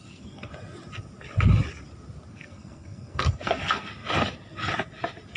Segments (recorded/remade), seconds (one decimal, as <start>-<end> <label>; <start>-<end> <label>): 0.0-0.5 remade; 0.5-2.3 recorded; 2.3-3.9 remade; 3.9-5.4 recorded